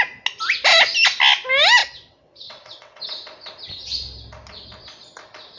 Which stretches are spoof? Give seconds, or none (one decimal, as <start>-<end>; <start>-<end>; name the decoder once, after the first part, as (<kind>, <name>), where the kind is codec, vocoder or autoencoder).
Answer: 1.8-3.0 (vocoder, WaveNeXt)